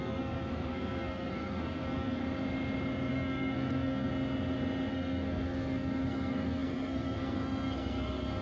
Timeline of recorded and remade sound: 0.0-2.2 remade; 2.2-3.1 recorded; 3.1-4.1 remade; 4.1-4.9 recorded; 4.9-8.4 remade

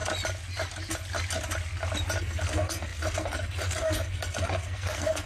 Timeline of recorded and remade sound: 0.0-2.2 recorded; 2.2-5.3 remade

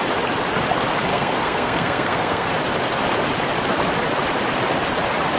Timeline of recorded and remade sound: 0.0-1.1 recorded; 1.1-2.5 remade; 2.5-5.4 recorded

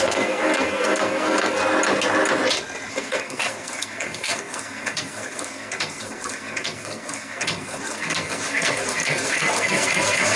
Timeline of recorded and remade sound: 0.0-1.6 remade; 1.6-2.9 recorded; 2.9-10.4 remade